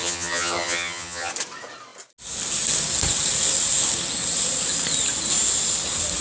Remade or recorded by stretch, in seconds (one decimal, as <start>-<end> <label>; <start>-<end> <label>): 0.0-1.3 remade; 1.3-6.2 recorded